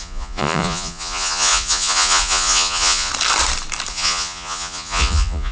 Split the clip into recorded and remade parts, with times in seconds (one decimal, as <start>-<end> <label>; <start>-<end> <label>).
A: 0.0-3.1 remade; 3.1-3.9 recorded; 3.9-5.5 remade

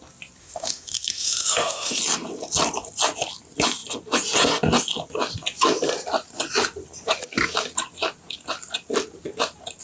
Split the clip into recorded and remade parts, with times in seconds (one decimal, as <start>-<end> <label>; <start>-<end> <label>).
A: 0.0-0.4 recorded; 0.4-2.0 remade; 2.0-9.8 recorded

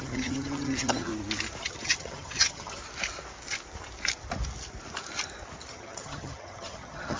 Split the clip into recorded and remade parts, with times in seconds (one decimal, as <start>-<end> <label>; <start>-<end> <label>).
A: 0.0-1.1 remade; 1.1-1.6 recorded; 1.6-2.8 remade; 2.8-5.7 recorded; 5.7-7.2 remade

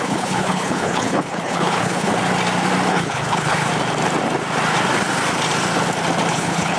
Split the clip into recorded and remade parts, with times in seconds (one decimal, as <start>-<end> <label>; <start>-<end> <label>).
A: 0.0-2.1 remade; 2.1-2.9 recorded; 2.9-3.7 remade; 3.7-6.3 recorded; 6.3-6.8 remade

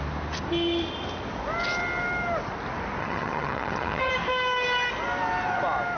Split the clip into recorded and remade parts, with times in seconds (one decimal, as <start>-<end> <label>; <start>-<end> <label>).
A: 0.0-3.0 recorded; 3.0-4.1 remade; 4.1-6.0 recorded

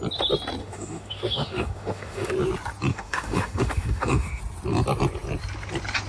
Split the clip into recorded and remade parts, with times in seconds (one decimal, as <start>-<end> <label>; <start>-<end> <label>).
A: 0.0-0.6 recorded; 0.6-2.3 remade; 2.3-2.9 recorded; 2.9-4.4 remade; 4.4-6.1 recorded

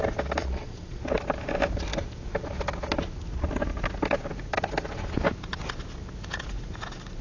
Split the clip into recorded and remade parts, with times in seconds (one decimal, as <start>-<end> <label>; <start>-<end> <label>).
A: 0.0-0.4 recorded; 0.4-1.0 remade; 1.0-7.2 recorded

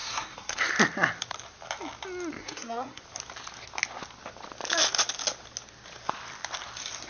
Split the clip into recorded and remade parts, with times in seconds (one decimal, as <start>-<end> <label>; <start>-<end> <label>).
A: 0.0-0.6 remade; 0.6-2.4 recorded; 2.4-3.0 remade; 3.0-7.1 recorded